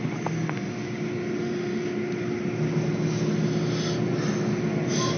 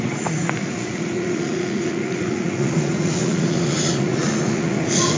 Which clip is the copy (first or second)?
second